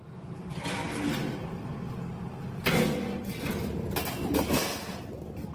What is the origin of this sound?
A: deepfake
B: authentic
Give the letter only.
B